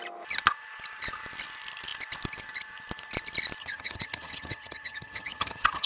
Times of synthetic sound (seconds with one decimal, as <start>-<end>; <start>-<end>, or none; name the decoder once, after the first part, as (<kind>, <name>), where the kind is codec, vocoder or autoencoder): 3.6-5.9 (vocoder, HiFi-GAN)